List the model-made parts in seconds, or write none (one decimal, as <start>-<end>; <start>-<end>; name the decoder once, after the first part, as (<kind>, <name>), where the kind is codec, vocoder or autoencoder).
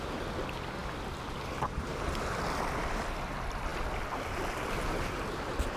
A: 0.8-1.4 (vocoder, BigVGAN v2); 1.9-3.1